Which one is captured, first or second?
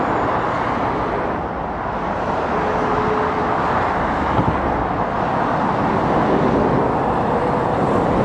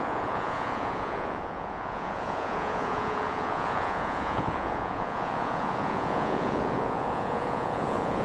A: first